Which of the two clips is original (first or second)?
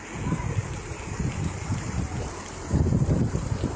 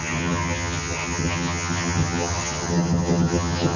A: first